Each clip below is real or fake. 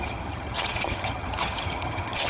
fake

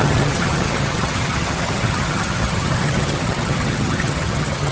fake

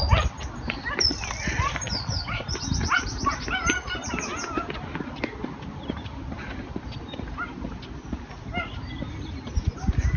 real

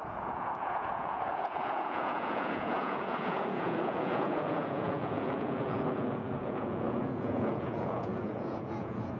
fake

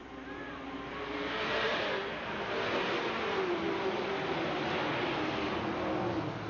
real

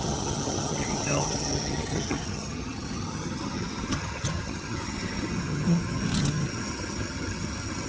fake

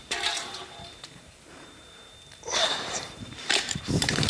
fake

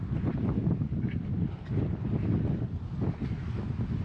real